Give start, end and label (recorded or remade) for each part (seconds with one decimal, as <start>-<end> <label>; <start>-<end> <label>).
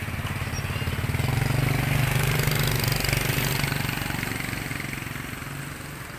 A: 0.0-6.2 recorded